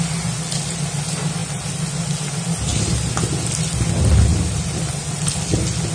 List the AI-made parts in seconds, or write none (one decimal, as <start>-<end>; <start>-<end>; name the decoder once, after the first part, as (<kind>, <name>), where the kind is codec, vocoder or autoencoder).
none